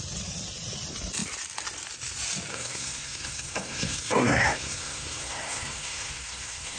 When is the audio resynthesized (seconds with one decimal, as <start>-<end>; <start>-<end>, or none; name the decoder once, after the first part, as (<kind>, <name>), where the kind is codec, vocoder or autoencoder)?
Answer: 2.5-6.8 (codec, SNAC)